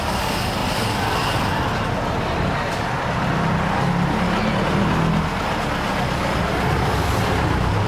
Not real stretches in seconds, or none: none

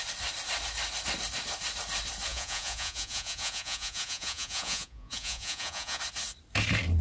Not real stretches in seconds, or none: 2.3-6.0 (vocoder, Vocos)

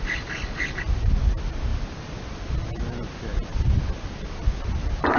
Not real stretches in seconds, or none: none

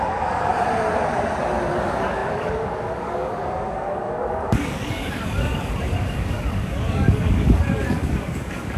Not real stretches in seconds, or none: 0.0-0.5 (codec, DAC); 1.7-8.8

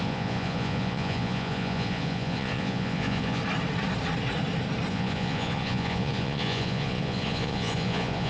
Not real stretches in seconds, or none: 0.0-3.4 (vocoder, Vocos); 4.9-8.3

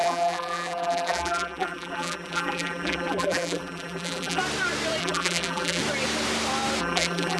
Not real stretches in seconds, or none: 0.0-4.4 (vocoder, BigVGAN v2); 5.0-5.8; 6.8-7.4

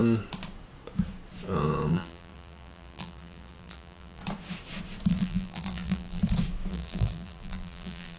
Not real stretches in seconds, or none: 1.9-4.2 (vocoder, BigVGAN v2); 5.1-6.2; 6.7-8.2